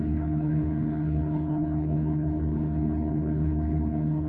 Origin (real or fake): fake